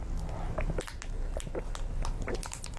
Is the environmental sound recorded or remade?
recorded